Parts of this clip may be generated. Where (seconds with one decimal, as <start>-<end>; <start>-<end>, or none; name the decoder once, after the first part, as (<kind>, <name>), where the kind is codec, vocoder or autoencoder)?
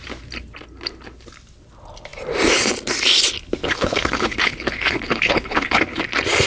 3.6-6.0 (codec, HILCodec)